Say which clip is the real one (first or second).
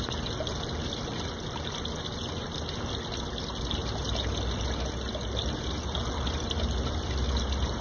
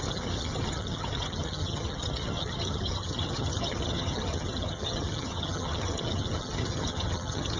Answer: first